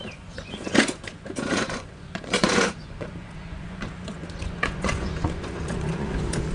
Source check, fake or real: fake